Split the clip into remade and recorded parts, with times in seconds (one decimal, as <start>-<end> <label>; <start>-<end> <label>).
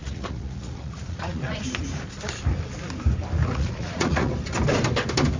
0.0-1.6 remade; 1.6-3.4 recorded; 3.4-4.3 remade; 4.3-5.4 recorded